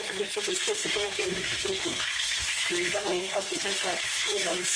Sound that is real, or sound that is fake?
fake